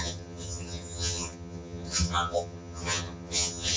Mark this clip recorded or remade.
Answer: remade